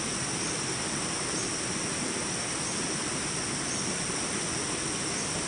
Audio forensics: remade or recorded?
recorded